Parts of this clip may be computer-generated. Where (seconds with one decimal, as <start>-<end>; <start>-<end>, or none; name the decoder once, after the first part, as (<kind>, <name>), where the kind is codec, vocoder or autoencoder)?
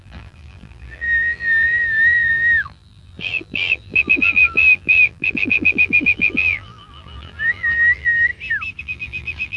0.0-8.3 (vocoder, BigVGAN v2); 8.8-9.6